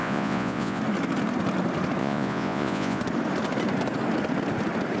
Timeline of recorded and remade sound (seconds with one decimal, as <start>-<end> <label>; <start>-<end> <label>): 0.0-0.8 remade; 0.8-2.0 recorded; 2.0-3.0 remade; 3.0-5.0 recorded